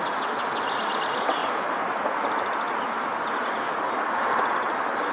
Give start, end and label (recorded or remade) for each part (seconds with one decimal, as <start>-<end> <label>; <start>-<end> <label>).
0.0-5.1 recorded